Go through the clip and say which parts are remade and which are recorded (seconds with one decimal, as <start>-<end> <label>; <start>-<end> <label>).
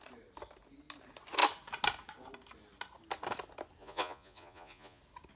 0.0-3.8 recorded; 3.8-5.0 remade; 5.0-5.4 recorded